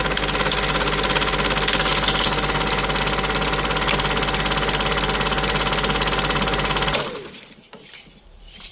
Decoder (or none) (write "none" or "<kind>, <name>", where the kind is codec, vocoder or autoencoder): none